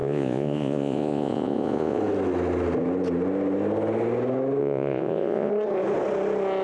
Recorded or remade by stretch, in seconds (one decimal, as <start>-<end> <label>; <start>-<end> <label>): 0.0-2.0 remade; 2.0-4.6 recorded; 4.6-5.5 remade; 5.5-6.6 recorded